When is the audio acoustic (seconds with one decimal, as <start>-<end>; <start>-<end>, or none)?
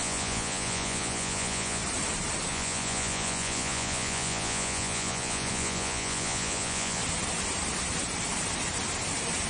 1.8-2.5; 7.0-9.5